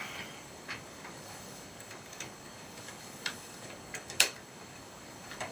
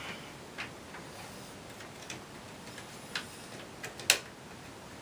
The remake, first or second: first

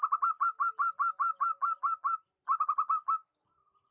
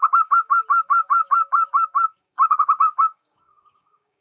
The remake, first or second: second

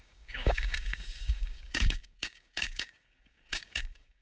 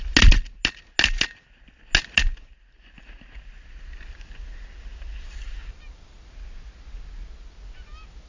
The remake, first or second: first